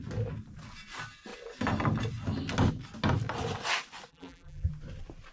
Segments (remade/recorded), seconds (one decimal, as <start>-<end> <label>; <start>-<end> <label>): 0.0-4.1 recorded; 4.1-4.7 remade; 4.7-5.3 recorded